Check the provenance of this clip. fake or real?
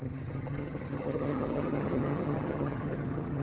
fake